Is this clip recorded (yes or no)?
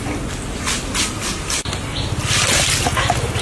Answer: yes